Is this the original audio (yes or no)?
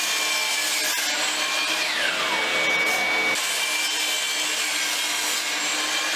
yes